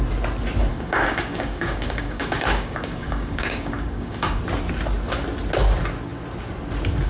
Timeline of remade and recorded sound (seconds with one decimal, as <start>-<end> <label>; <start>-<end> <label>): 0.0-0.7 recorded; 0.7-4.4 remade; 4.4-7.1 recorded